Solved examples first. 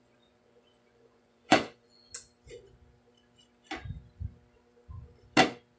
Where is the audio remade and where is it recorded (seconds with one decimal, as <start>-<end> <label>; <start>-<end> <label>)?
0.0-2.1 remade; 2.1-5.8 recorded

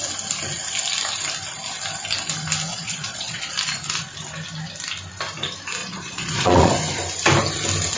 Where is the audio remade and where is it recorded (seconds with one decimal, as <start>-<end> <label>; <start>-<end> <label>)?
0.0-2.7 recorded; 2.7-3.4 remade; 3.4-5.8 recorded; 5.8-6.7 remade; 6.7-8.0 recorded

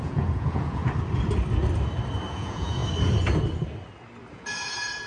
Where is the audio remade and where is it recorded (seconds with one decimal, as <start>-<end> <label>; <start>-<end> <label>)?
0.0-0.8 remade; 0.8-2.3 recorded; 2.3-2.8 remade; 2.8-4.3 recorded; 4.3-5.1 remade